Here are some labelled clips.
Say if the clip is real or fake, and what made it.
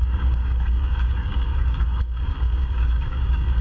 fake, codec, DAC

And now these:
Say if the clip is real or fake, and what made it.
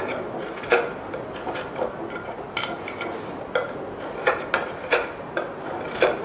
real